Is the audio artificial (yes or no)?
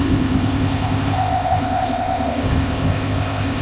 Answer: yes